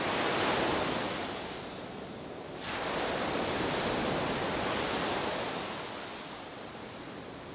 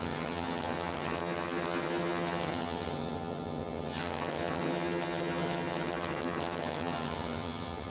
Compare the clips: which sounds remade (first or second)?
second